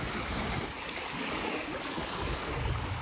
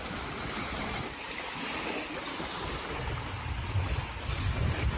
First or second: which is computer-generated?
first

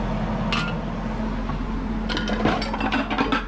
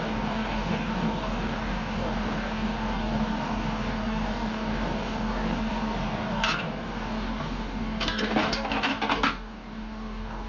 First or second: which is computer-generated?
second